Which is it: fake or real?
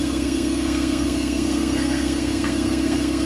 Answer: fake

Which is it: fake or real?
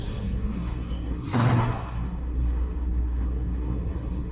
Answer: fake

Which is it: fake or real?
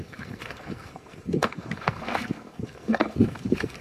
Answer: fake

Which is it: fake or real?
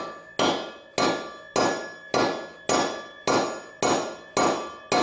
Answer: real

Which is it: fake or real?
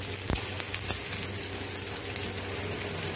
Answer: real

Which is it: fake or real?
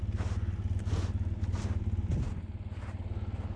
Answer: real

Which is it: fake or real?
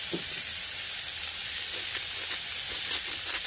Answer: real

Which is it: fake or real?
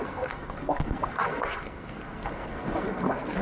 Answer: fake